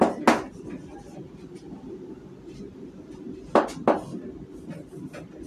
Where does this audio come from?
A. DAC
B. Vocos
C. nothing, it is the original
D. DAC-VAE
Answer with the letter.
C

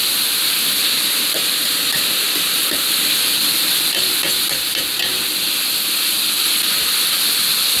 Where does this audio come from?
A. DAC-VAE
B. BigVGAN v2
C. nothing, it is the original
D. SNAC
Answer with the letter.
C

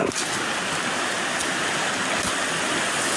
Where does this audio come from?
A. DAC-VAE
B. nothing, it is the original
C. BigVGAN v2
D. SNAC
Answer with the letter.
B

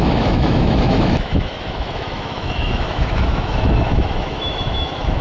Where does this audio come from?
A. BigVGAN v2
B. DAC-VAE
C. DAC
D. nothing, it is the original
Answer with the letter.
B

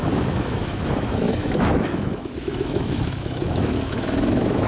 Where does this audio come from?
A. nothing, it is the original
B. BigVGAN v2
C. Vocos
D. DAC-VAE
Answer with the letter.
D